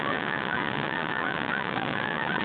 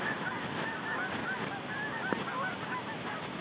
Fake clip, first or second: first